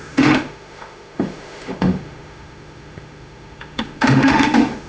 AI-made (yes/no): yes